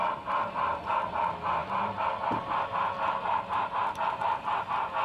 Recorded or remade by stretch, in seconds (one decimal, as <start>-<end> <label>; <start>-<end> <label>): 0.0-5.0 recorded